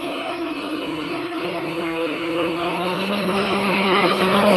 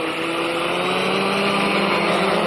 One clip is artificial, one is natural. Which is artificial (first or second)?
first